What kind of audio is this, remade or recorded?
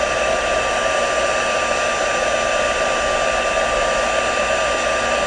recorded